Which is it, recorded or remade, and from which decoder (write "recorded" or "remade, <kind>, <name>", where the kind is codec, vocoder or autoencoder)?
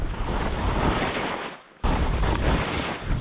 remade, vocoder, BigVGAN v2